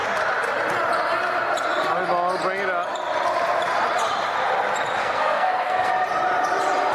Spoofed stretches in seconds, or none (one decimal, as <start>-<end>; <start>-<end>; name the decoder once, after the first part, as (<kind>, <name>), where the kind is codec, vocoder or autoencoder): 5.0-5.9 (codec, SNAC)